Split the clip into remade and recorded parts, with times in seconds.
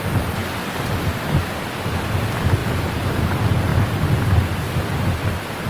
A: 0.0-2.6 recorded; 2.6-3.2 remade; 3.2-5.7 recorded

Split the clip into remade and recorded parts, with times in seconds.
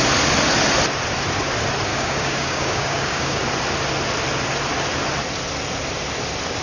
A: 0.0-1.9 recorded; 1.9-3.4 remade; 3.4-6.6 recorded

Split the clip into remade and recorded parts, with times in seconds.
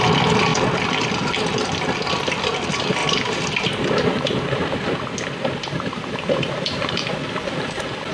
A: 0.0-3.0 recorded; 3.0-7.1 remade; 7.1-8.1 recorded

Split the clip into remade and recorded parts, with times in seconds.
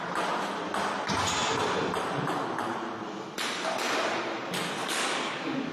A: 0.0-4.8 recorded; 4.8-5.7 remade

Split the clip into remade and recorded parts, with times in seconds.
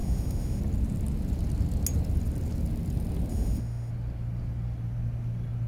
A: 0.0-0.6 remade; 0.6-3.3 recorded; 3.3-3.9 remade; 3.9-5.7 recorded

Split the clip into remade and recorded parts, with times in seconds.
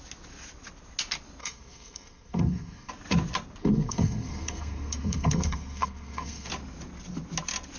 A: 0.0-1.4 recorded; 1.4-2.9 remade; 2.9-3.6 recorded; 3.6-6.5 remade; 6.5-7.8 recorded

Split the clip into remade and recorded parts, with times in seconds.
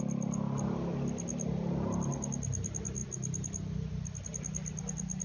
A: 0.0-5.2 recorded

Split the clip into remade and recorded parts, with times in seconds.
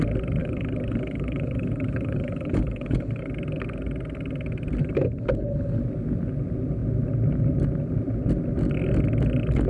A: 0.0-0.4 recorded; 0.4-3.3 remade; 3.3-4.8 recorded; 4.8-5.8 remade; 5.8-9.7 recorded